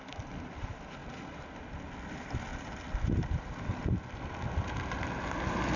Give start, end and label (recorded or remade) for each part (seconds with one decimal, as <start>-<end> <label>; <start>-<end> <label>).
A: 0.0-2.5 recorded; 2.5-3.4 remade; 3.4-5.8 recorded